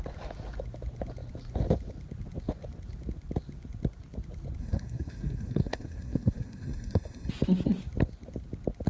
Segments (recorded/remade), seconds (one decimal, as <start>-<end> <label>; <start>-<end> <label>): 0.0-4.6 recorded; 4.6-7.3 remade; 7.3-8.9 recorded